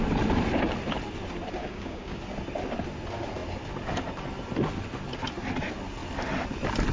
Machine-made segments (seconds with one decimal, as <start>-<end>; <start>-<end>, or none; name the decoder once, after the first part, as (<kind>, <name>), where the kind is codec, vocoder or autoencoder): 1.6-2.2 (codec, DAC)